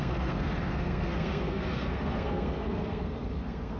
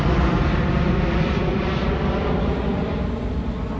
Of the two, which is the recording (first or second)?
second